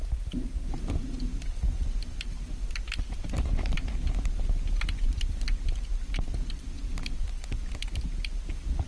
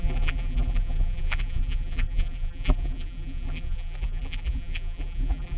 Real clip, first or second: first